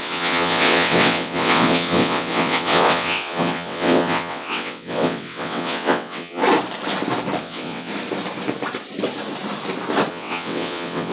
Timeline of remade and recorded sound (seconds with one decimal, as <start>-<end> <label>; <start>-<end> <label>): 0.0-6.4 remade; 6.4-7.4 recorded; 7.4-7.9 remade; 7.9-10.1 recorded; 10.1-11.1 remade